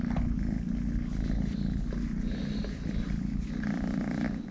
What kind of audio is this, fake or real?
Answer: real